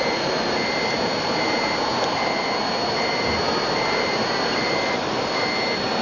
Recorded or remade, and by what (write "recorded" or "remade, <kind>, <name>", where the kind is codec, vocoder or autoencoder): recorded